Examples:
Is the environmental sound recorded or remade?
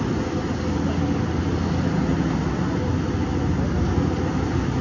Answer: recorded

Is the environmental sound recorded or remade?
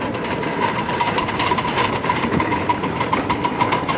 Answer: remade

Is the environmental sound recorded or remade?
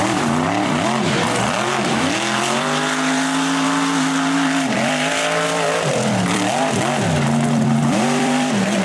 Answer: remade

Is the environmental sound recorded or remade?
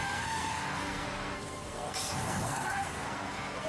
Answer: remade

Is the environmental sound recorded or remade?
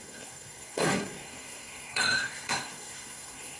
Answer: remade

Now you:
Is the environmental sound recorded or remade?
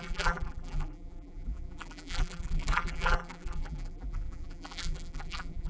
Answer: remade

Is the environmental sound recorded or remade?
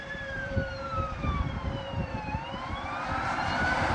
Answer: remade